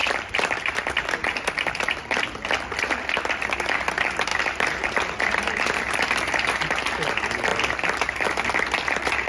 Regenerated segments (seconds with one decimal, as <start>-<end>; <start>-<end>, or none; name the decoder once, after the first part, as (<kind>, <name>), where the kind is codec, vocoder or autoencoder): 0.0-3.9 (vocoder, BigVGAN v2); 4.3-6.1